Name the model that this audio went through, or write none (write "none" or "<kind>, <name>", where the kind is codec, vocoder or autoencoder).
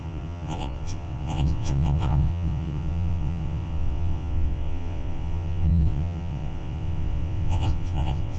vocoder, WaveNeXt